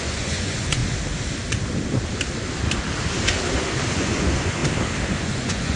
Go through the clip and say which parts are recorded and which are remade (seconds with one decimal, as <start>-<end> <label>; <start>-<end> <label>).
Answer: 0.0-0.8 remade; 0.8-3.9 recorded; 3.9-4.6 remade; 4.6-5.2 recorded; 5.2-5.8 remade

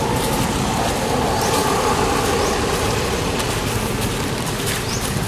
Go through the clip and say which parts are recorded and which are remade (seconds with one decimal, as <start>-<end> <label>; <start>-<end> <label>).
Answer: 0.0-1.6 recorded; 1.6-4.8 remade; 4.8-5.3 recorded

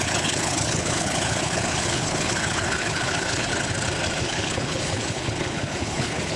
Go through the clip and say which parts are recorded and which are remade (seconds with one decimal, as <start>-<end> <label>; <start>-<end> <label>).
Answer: 0.0-3.5 remade; 3.5-4.2 recorded; 4.2-6.4 remade